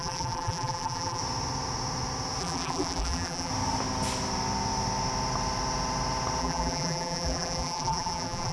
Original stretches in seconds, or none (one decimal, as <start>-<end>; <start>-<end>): 1.2-2.4; 3.5-6.4